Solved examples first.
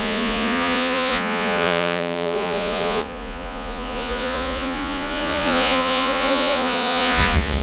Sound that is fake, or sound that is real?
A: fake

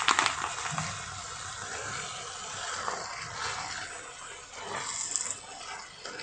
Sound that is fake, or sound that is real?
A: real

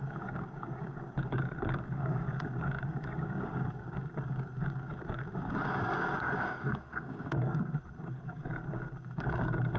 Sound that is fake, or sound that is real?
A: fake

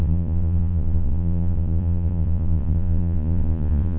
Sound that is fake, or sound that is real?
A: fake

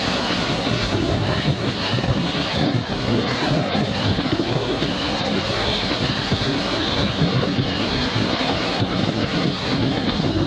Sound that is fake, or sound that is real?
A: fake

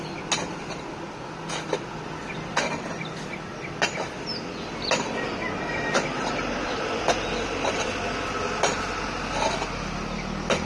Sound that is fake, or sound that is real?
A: real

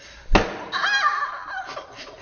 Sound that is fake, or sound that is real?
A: real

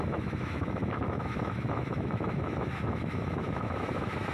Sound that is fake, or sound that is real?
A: fake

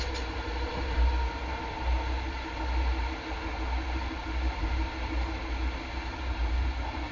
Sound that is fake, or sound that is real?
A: real